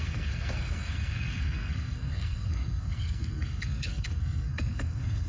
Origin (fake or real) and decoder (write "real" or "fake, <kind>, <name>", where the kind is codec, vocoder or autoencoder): fake, codec, SNAC